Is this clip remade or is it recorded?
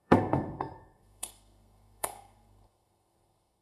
remade